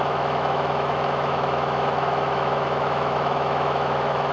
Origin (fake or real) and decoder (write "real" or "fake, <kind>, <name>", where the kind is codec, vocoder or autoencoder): fake, autoencoder, DAC-VAE